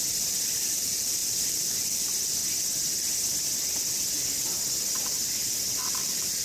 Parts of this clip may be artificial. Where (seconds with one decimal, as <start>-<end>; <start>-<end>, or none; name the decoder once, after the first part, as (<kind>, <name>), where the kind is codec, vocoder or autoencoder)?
0.0-2.4 (vocoder, BigVGAN v2); 5.7-6.4